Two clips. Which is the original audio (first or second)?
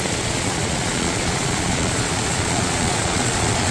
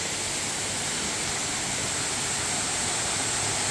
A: second